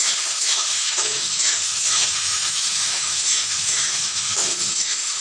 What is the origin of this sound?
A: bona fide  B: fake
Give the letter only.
B